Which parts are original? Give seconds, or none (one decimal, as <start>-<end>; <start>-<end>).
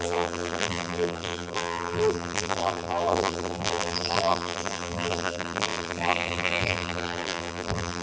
none